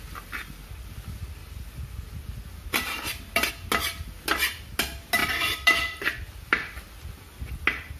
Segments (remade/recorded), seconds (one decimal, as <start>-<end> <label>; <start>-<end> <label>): 0.0-1.4 recorded; 1.4-3.5 remade; 3.5-5.2 recorded; 5.2-7.2 remade; 7.2-8.0 recorded